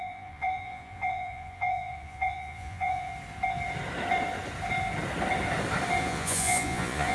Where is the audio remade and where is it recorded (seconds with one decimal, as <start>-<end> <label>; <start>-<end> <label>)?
0.0-3.1 remade; 3.1-6.0 recorded; 6.0-7.1 remade